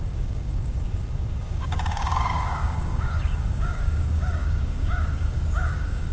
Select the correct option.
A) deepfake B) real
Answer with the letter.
A